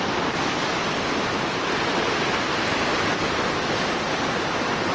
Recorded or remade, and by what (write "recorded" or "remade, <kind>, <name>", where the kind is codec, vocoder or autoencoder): recorded